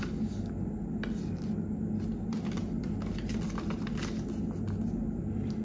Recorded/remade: recorded